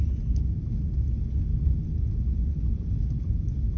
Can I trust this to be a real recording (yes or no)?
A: yes